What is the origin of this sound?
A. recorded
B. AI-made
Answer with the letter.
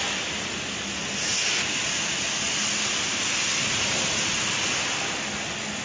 A